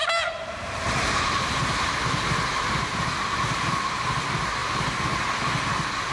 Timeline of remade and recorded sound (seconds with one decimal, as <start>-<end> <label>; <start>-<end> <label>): 0.0-3.7 remade; 3.7-6.1 recorded